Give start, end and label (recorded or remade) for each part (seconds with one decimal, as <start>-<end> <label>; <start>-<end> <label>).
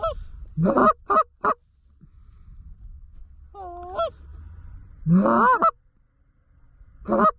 0.0-7.4 recorded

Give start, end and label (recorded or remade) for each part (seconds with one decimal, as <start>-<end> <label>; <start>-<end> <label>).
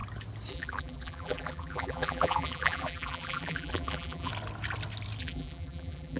0.0-0.5 recorded; 0.5-4.3 remade; 4.3-5.2 recorded; 5.2-6.2 remade